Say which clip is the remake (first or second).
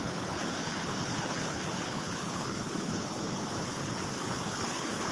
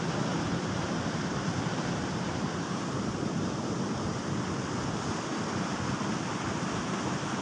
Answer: first